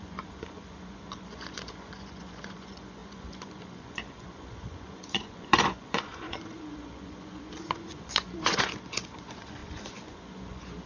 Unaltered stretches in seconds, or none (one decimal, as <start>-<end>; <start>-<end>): none